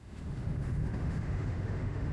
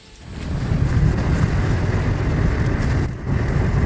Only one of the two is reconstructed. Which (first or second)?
first